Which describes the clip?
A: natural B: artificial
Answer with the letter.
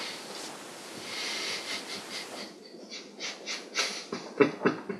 A